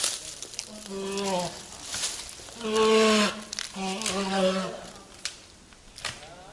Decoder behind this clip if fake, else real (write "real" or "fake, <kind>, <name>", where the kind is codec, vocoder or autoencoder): real